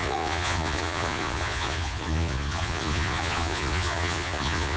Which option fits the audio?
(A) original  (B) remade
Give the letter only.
B